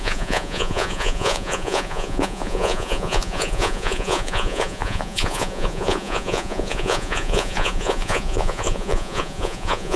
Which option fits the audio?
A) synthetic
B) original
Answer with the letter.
A